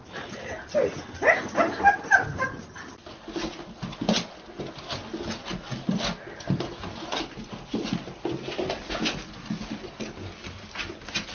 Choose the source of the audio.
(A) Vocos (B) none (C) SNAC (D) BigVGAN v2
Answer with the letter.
B